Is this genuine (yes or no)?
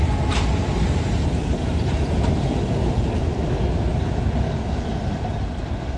yes